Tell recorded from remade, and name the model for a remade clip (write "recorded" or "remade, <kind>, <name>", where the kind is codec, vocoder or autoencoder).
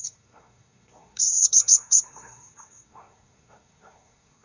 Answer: remade, codec, SNAC